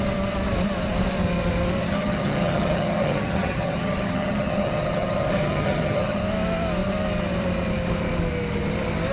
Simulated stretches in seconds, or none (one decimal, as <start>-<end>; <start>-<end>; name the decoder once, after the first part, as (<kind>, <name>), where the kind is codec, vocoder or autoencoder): 1.8-6.2 (vocoder, HiFi-GAN)